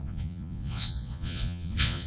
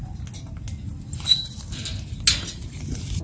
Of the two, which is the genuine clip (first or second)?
second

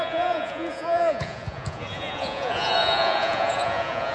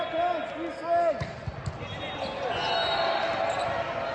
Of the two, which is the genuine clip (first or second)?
second